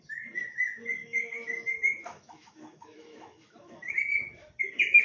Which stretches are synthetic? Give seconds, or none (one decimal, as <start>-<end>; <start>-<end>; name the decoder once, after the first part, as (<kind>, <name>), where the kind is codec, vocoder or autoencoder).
1.0-4.0 (autoencoder, DAC-VAE)